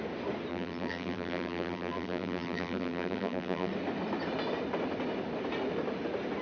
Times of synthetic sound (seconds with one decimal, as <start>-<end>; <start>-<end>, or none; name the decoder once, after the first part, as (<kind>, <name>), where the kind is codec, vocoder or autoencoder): 0.5-3.7 (vocoder, BigVGAN v2)